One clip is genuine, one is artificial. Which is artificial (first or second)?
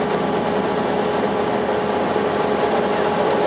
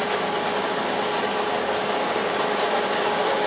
second